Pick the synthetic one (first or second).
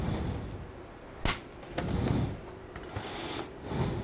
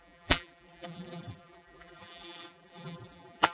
second